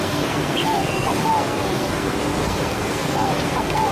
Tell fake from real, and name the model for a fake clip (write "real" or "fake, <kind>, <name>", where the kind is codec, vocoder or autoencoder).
fake, codec, SNAC